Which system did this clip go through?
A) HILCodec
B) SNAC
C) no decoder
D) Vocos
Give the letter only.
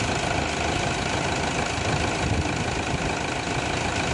C